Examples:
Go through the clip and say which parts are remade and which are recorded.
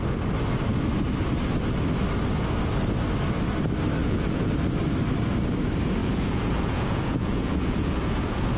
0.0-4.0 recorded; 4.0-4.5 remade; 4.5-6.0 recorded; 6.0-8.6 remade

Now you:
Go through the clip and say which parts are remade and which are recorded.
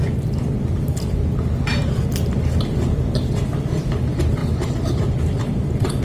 0.0-1.2 remade; 1.2-1.8 recorded; 1.8-4.4 remade; 4.4-5.2 recorded; 5.2-6.0 remade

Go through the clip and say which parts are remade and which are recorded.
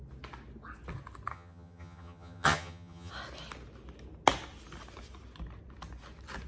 0.0-1.3 recorded; 1.3-3.1 remade; 3.1-6.5 recorded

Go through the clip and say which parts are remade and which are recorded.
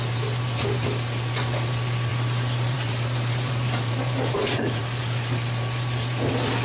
0.0-2.1 recorded; 2.1-4.8 remade; 4.8-6.6 recorded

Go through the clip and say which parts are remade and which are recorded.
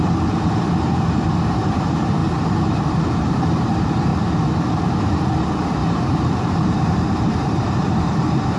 0.0-4.1 remade; 4.1-5.0 recorded; 5.0-8.6 remade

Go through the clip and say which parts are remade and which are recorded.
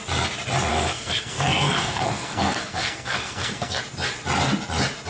0.0-0.7 recorded; 0.7-3.8 remade; 3.8-5.1 recorded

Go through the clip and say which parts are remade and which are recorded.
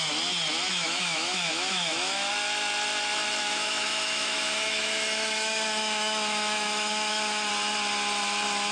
0.0-0.7 recorded; 0.7-2.3 remade; 2.3-3.4 recorded; 3.4-7.5 remade; 7.5-8.7 recorded